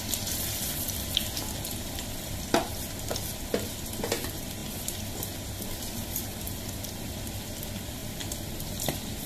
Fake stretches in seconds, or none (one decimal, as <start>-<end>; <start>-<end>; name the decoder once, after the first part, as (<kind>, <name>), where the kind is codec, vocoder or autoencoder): none